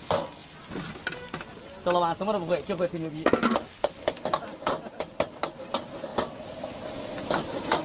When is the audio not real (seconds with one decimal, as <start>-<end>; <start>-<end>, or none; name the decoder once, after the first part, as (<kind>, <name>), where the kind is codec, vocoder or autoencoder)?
none